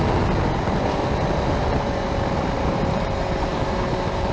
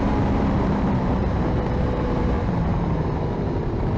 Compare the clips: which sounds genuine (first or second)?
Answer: first